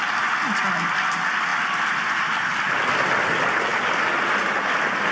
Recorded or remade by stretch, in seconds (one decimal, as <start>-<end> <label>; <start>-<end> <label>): 0.0-5.1 recorded